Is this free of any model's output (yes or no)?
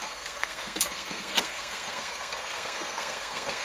no